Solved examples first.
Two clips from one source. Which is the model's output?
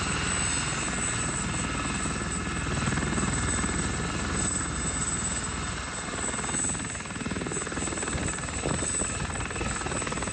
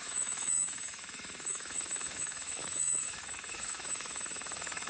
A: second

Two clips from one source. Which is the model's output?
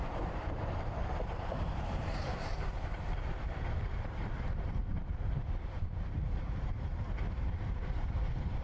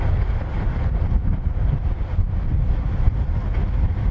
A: first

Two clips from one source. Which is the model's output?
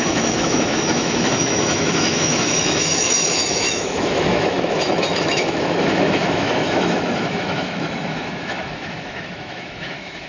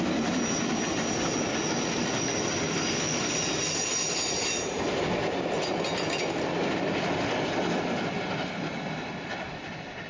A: first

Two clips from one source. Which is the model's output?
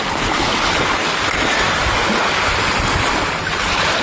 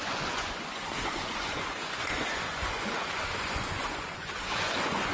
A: second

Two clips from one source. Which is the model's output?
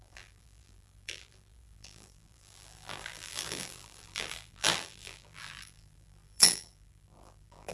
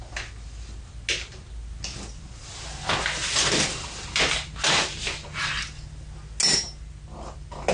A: first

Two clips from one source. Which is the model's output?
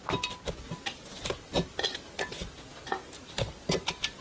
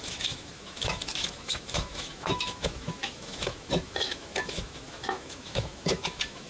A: second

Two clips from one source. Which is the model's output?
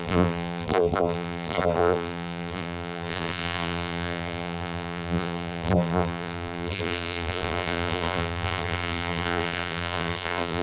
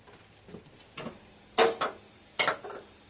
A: first